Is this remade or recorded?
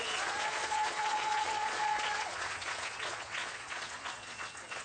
remade